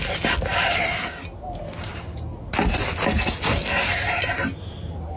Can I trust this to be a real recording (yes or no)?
yes